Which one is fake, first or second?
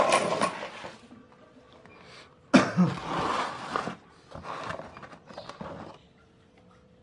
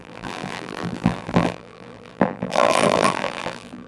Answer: second